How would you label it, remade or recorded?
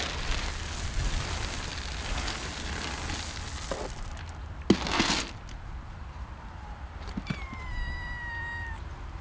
recorded